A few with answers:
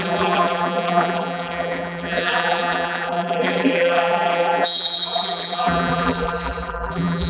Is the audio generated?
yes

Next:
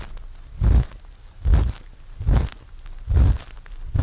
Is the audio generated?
no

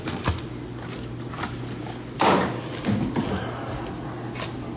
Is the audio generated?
no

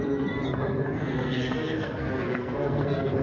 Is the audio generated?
yes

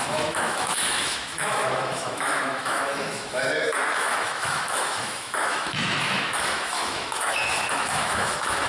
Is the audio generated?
yes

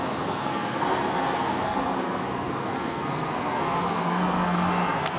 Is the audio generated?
yes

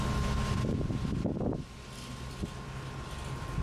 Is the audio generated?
no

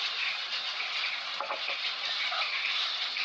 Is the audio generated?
no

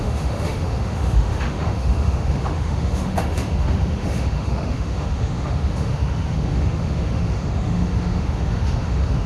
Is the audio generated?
yes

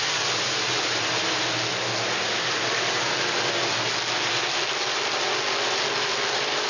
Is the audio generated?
no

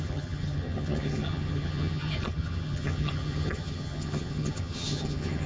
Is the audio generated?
yes